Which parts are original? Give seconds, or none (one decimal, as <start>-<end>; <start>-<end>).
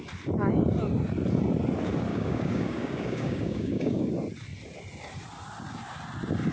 0.0-2.1; 4.1-6.5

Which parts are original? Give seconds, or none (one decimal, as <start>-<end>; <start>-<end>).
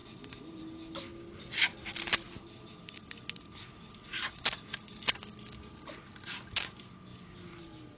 0.0-8.0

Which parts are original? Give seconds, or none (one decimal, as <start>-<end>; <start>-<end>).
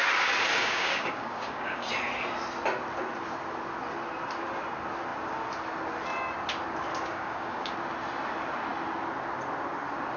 0.0-0.5; 1.9-6.9; 7.7-10.2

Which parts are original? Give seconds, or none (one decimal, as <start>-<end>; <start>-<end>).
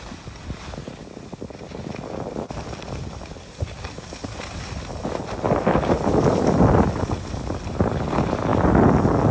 0.0-9.3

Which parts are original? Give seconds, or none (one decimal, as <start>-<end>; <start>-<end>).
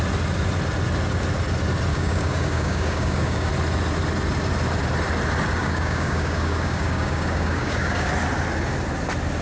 0.0-1.9; 3.5-5.6; 8.1-9.4